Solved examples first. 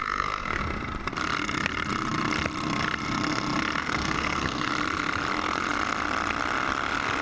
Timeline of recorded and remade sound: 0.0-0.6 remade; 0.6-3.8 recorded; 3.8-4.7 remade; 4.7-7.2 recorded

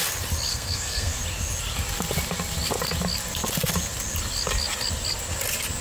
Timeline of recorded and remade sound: 0.0-0.5 recorded; 0.5-1.2 remade; 1.2-5.8 recorded

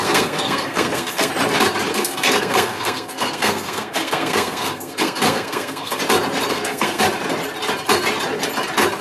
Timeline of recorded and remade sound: 0.0-1.3 remade; 1.3-1.9 recorded; 1.9-6.0 remade; 6.0-6.5 recorded; 6.5-7.0 remade; 7.0-9.0 recorded

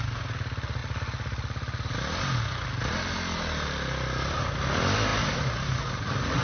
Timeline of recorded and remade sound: 0.0-6.4 recorded

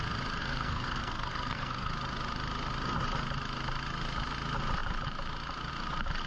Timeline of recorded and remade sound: 0.0-0.4 recorded; 0.4-1.9 remade; 1.9-6.3 recorded

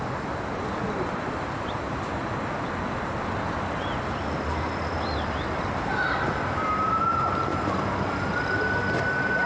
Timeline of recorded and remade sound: 0.0-9.5 recorded

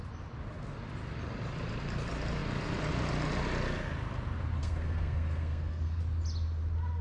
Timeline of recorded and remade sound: 0.0-4.6 recorded; 4.6-6.0 remade; 6.0-7.0 recorded